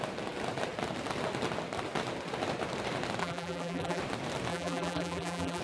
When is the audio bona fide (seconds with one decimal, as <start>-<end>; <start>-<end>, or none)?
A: 0.0-3.2; 4.0-4.5